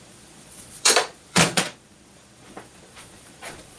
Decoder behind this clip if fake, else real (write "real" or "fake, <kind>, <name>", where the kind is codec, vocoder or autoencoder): fake, vocoder, Vocos